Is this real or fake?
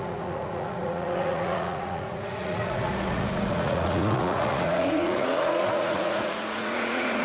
fake